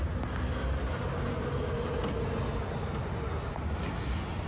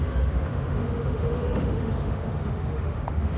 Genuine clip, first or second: first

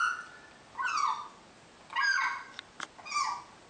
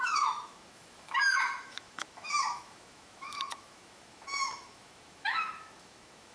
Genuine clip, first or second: first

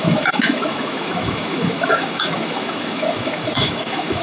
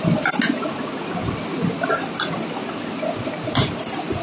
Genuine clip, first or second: second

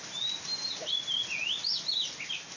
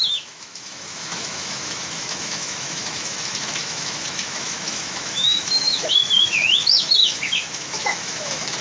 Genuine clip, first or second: first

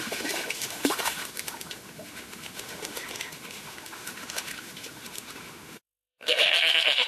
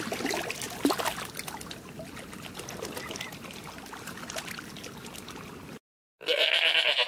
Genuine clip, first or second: second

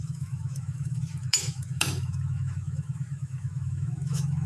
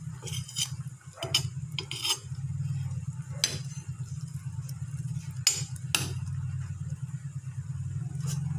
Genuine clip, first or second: second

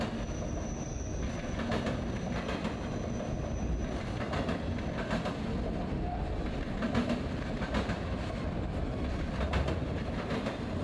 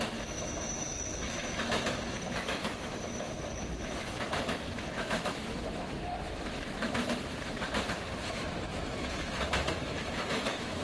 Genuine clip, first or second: first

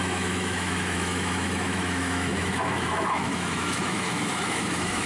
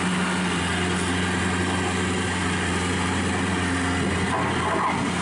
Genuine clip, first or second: second